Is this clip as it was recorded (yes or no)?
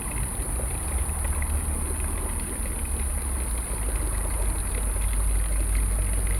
yes